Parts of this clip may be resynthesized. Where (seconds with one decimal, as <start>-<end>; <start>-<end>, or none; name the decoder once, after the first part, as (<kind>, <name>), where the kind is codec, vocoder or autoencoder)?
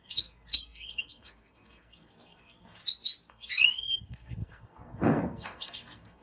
0.0-2.8 (codec, SNAC); 3.3-6.2